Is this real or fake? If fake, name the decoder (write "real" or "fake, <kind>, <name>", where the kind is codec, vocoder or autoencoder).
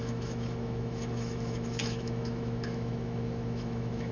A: fake, autoencoder, DAC-VAE